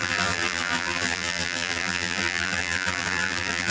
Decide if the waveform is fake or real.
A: fake